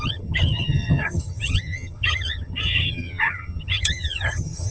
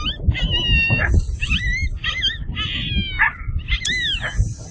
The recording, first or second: second